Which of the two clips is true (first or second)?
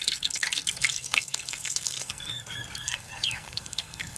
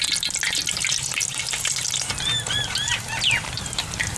second